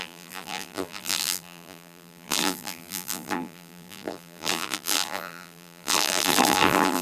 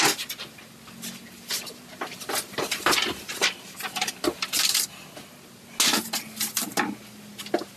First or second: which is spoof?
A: first